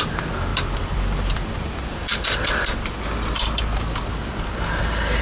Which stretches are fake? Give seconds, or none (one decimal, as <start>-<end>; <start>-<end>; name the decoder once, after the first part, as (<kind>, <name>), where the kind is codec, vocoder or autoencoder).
0.5-3.6 (vocoder, BigVGAN v2)